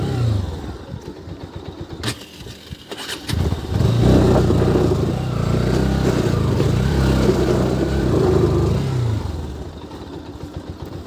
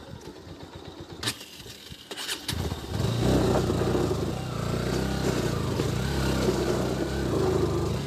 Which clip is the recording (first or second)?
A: second